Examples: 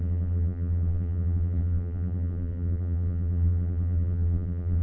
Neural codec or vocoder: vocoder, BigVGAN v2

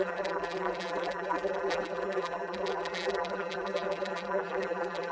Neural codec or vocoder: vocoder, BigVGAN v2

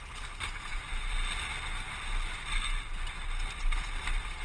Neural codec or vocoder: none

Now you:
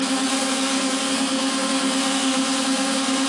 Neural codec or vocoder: codec, SNAC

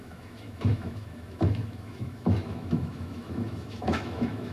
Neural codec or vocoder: autoencoder, DAC-VAE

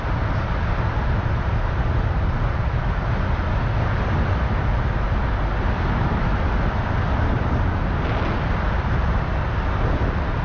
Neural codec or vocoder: none